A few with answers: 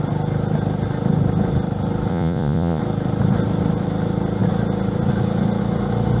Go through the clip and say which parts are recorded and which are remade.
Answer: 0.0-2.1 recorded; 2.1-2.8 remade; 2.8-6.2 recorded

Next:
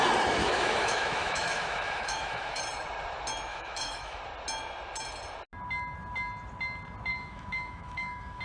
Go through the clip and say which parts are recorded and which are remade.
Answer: 0.0-0.4 recorded; 0.4-2.6 remade; 2.6-3.5 recorded; 3.5-4.2 remade; 4.2-7.1 recorded; 7.1-8.4 remade

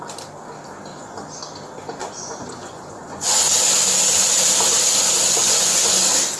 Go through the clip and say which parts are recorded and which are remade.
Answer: 0.0-0.9 recorded; 0.9-1.4 remade; 1.4-2.0 recorded; 2.0-3.5 remade; 3.5-5.4 recorded; 5.4-6.0 remade; 6.0-6.4 recorded

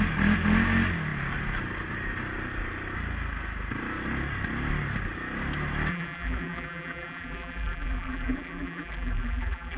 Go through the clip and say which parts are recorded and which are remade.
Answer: 0.0-5.9 recorded; 5.9-9.8 remade

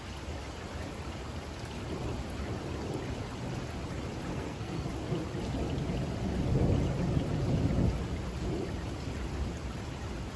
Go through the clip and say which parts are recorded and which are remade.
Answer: 0.0-4.3 recorded; 4.3-4.9 remade; 4.9-10.4 recorded

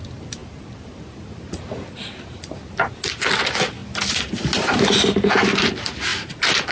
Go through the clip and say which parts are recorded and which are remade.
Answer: 0.0-6.7 recorded

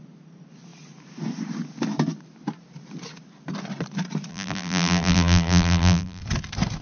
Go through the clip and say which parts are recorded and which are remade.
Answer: 0.0-4.3 recorded; 4.3-6.2 remade; 6.2-6.8 recorded